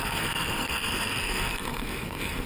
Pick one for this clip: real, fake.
fake